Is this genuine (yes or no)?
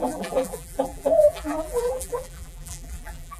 no